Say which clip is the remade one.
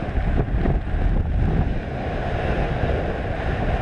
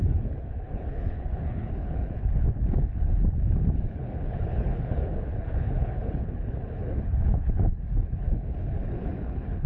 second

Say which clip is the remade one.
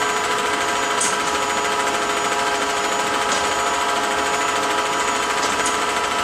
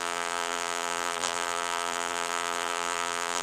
second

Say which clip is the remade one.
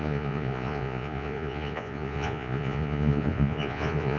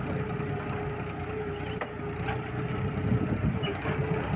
first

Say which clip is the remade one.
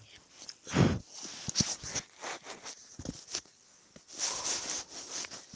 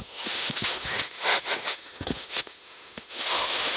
second